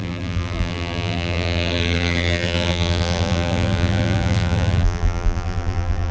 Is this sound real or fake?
fake